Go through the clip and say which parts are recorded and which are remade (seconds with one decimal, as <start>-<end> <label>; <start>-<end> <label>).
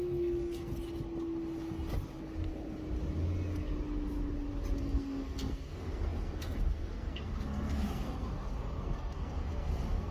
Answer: 0.0-0.7 remade; 0.7-4.8 recorded; 4.8-10.1 remade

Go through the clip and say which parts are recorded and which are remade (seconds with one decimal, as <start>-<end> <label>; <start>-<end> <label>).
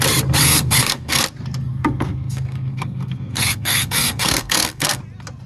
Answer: 0.0-0.4 recorded; 0.4-1.2 remade; 1.2-1.7 recorded; 1.7-5.0 remade; 5.0-5.5 recorded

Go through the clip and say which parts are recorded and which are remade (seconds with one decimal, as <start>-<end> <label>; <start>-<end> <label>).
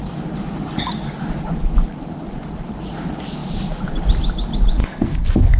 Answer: 0.0-4.8 recorded; 4.8-5.6 remade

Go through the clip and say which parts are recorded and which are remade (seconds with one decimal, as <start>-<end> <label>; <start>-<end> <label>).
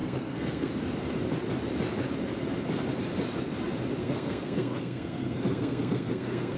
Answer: 0.0-0.7 remade; 0.7-4.0 recorded; 4.0-6.6 remade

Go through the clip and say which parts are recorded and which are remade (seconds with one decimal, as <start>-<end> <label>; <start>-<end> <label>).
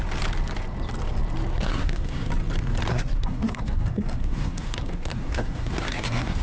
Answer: 0.0-1.5 recorded; 1.5-2.3 remade; 2.3-2.9 recorded; 2.9-6.4 remade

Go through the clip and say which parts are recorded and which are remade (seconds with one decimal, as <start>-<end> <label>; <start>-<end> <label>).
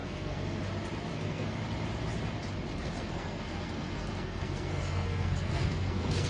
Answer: 0.0-0.6 remade; 0.6-1.1 recorded; 1.1-1.6 remade; 1.6-2.7 recorded; 2.7-6.3 remade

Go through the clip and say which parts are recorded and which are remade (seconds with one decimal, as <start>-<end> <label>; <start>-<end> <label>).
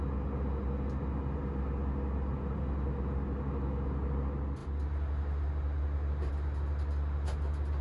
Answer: 0.0-7.8 recorded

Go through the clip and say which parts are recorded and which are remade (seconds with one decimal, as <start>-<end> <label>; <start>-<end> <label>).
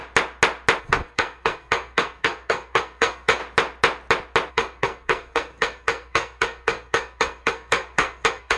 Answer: 0.0-0.8 recorded; 0.8-3.4 remade; 3.4-4.5 recorded; 4.5-8.6 remade